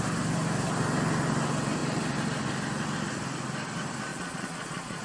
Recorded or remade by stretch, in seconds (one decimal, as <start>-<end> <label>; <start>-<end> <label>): 0.0-4.1 recorded; 4.1-5.0 remade